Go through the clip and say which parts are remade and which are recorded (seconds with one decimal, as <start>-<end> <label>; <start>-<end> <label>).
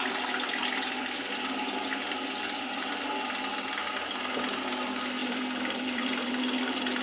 0.0-5.2 recorded; 5.2-6.3 remade; 6.3-7.0 recorded